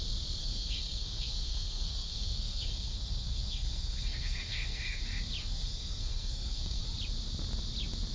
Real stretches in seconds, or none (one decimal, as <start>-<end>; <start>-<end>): 0.0-0.4; 5.0-5.4; 6.8-8.1